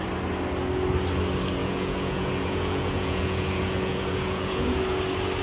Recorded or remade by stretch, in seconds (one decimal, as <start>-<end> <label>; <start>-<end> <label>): 0.0-1.6 recorded; 1.6-4.8 remade; 4.8-5.4 recorded